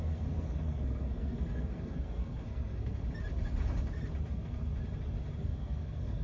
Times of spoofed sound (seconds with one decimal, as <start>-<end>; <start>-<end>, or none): 0.0-3.0; 4.3-4.7; 5.4-6.2